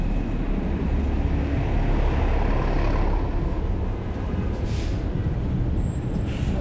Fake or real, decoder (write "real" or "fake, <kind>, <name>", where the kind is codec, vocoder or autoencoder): real